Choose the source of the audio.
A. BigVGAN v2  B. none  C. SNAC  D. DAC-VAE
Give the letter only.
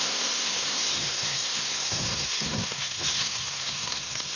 C